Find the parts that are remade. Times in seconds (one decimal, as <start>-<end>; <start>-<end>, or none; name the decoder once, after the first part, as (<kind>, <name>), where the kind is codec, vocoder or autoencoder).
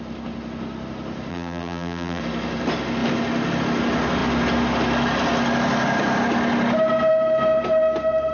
1.3-2.2 (vocoder, BigVGAN v2)